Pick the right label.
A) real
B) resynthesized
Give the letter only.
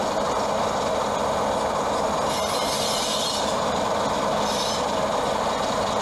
A